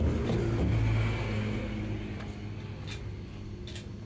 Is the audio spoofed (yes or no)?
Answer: no